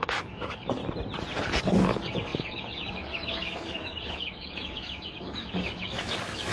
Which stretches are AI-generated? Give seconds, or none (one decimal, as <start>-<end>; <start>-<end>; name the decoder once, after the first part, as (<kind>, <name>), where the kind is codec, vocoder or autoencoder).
0.0-0.8 (codec, DAC); 1.6-6.5

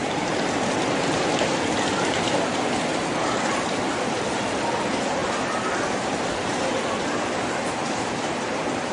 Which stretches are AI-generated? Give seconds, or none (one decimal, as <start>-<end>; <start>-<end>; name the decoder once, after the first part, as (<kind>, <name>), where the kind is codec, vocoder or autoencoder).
none

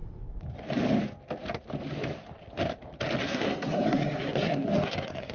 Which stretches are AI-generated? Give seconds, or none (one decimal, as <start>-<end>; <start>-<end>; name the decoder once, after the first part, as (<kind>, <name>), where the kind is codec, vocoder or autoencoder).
3.2-5.3 (codec, SNAC)

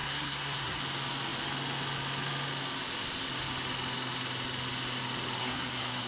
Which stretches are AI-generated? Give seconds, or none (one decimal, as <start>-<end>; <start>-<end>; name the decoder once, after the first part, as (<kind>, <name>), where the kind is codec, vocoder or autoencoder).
0.0-0.8 (codec, SNAC); 5.4-6.1

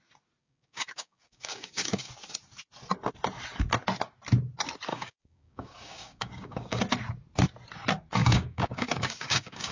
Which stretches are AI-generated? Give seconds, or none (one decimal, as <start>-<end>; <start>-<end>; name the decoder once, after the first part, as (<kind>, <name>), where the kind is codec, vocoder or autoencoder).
0.4-2.1 (codec, DAC); 4.9-6.8; 8.2-9.7

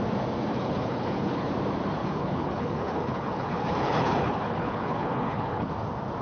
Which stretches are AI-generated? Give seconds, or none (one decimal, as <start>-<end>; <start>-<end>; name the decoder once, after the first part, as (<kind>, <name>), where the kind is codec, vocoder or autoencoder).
0.5-1.5 (codec, HILCodec); 2.0-5.7

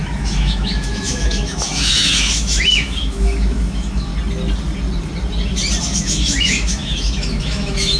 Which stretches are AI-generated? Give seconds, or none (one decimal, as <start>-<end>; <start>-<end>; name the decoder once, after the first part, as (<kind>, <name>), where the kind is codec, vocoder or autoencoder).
0.0-4.1 (autoencoder, DAC-VAE); 5.8-8.0

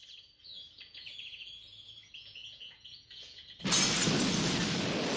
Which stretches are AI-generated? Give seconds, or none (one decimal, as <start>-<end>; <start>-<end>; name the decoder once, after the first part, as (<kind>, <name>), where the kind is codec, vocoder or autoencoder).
0.5-3.6 (vocoder, Vocos)